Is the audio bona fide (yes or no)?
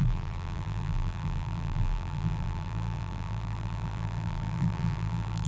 no